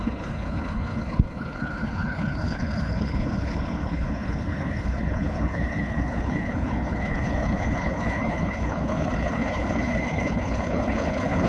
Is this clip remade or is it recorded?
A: remade